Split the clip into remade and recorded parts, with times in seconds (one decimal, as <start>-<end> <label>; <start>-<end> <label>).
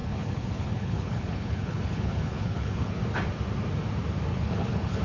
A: 0.0-3.0 remade; 3.0-4.3 recorded; 4.3-5.0 remade